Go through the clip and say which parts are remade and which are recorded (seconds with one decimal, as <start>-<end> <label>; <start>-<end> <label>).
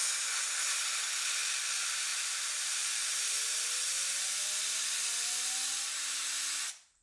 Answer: 0.0-2.1 recorded; 2.1-3.0 remade; 3.0-7.0 recorded